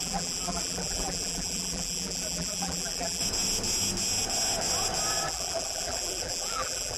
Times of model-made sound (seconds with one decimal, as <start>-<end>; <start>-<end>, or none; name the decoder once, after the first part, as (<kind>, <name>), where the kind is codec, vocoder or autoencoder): 0.0-3.2 (vocoder, BigVGAN v2); 5.3-7.0